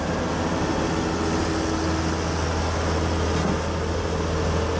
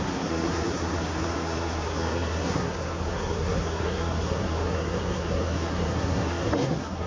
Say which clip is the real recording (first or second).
first